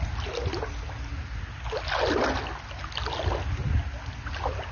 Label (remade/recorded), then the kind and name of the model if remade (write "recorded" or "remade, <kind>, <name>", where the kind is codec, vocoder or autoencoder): recorded